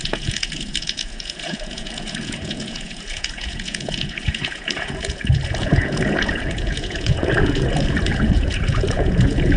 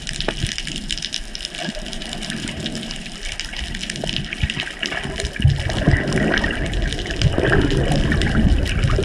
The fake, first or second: first